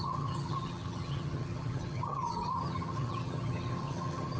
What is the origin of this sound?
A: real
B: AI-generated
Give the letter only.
B